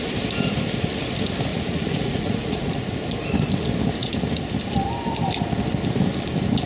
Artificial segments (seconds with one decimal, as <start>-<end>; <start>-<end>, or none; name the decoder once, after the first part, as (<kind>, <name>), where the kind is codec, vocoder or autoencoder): 1.5-2.9 (vocoder, Vocos)